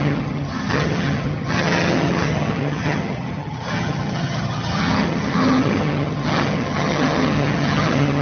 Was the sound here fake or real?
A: fake